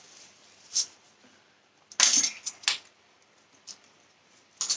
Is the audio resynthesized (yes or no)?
no